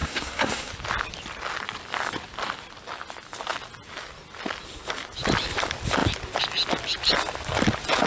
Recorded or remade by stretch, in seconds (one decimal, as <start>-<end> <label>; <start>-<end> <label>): 0.0-0.7 remade; 0.7-8.1 recorded